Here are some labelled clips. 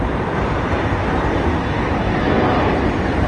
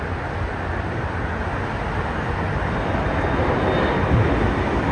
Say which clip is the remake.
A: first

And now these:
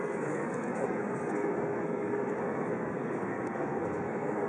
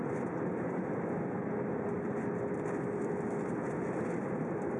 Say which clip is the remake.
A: first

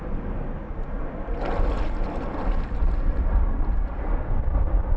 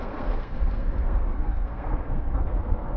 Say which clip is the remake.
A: second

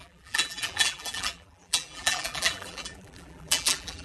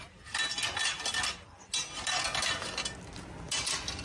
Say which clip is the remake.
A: first